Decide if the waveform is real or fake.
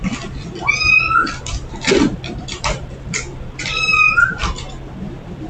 fake